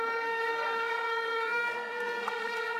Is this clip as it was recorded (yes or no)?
no